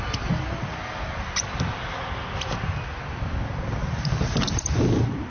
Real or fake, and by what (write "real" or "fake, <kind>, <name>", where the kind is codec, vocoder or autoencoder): real